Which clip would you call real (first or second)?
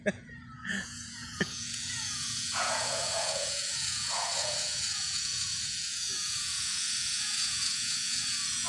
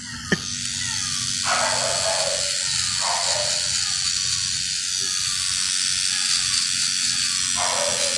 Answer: second